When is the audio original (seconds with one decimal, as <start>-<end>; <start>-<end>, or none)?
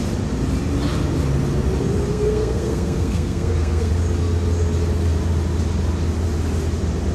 0.0-2.1; 3.9-7.1